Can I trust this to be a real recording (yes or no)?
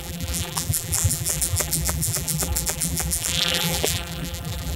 no